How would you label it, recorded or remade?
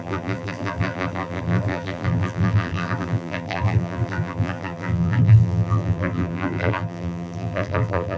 remade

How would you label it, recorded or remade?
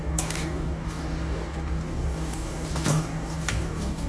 remade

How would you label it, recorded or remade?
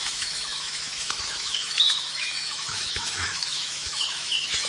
remade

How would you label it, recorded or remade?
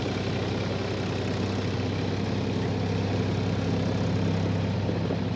recorded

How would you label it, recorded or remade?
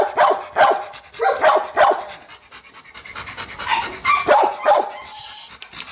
recorded